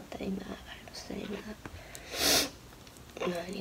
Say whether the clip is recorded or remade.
recorded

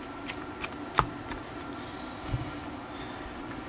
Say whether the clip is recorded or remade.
recorded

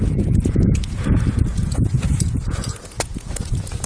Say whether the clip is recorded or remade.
remade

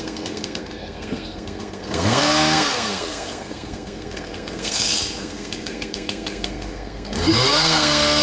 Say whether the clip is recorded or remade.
remade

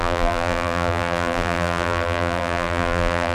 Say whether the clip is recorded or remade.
remade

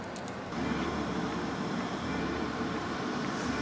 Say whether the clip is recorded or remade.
remade